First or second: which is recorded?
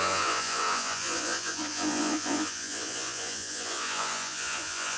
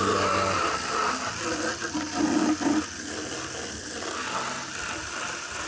second